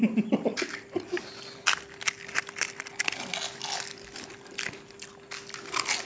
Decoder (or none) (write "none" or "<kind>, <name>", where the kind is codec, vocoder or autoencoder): none